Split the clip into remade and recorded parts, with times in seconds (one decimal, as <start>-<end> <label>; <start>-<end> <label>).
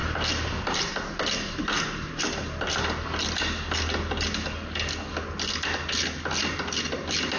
0.0-7.4 recorded